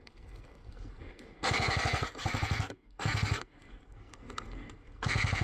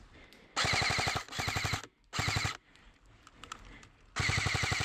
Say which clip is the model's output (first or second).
first